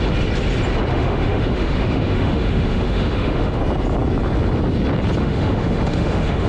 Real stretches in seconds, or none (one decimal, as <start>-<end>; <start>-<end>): 0.0-0.9; 3.6-5.2